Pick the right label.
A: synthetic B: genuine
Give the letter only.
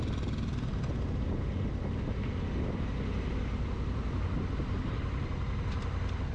B